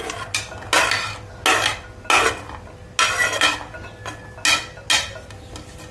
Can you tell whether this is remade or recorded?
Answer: recorded